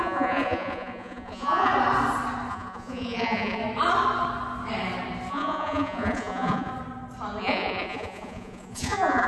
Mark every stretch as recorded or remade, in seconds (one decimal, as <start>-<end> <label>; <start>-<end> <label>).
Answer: 0.0-1.7 remade; 1.7-2.5 recorded; 2.5-3.6 remade; 3.6-5.3 recorded; 5.3-6.7 remade; 6.7-7.4 recorded; 7.4-9.3 remade